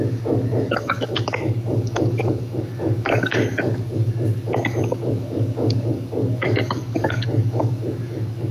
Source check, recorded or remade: remade